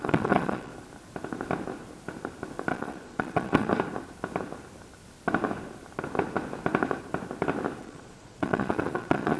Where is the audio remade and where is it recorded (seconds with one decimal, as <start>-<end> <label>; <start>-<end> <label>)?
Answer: 0.0-0.7 remade; 0.7-2.7 recorded; 2.7-3.7 remade; 3.7-7.8 recorded; 7.8-9.4 remade